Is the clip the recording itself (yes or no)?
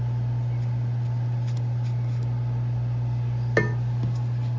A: yes